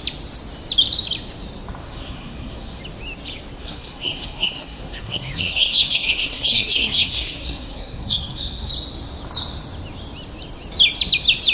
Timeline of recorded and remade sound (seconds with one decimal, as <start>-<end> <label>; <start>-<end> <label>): 0.0-1.8 recorded; 1.8-2.8 remade; 2.8-3.6 recorded; 3.6-8.7 remade; 8.7-11.5 recorded